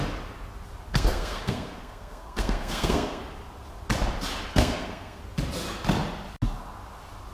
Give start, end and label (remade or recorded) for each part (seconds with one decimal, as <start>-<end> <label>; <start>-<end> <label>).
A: 0.0-0.9 recorded; 0.9-3.2 remade; 3.2-4.5 recorded; 4.5-5.2 remade; 5.2-7.3 recorded